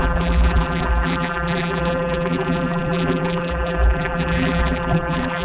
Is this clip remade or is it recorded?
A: remade